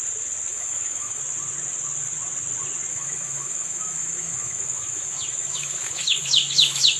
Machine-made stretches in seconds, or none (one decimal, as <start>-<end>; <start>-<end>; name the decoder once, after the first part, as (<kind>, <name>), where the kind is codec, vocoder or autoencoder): 0.5-1.2 (autoencoder, DAC-VAE); 2.9-7.0